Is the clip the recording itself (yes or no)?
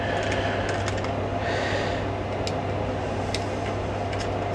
yes